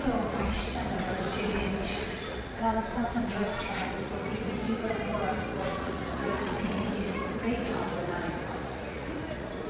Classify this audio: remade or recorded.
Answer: remade